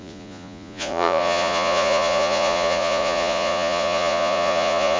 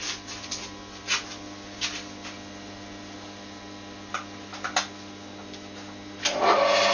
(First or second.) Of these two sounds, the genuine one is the second